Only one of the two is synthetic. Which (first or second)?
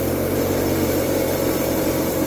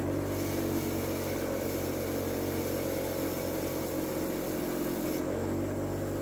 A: first